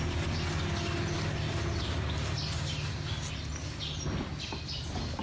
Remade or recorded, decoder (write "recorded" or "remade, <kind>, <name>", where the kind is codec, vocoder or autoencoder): recorded